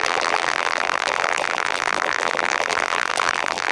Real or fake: fake